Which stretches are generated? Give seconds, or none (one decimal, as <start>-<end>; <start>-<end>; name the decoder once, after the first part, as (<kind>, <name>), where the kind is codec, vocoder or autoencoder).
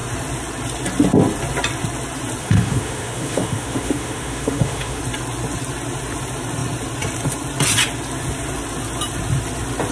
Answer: 2.4-5.0 (autoencoder, DAC-VAE)